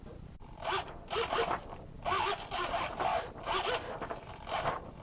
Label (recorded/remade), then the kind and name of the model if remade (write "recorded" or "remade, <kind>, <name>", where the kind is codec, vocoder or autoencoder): recorded